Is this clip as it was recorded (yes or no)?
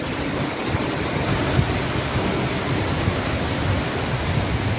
yes